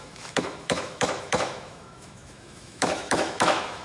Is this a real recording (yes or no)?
no